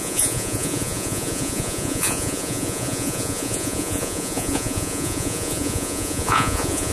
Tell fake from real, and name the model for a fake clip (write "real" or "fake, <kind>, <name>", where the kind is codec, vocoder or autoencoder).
fake, vocoder, Vocos